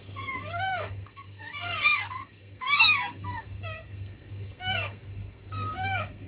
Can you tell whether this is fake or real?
fake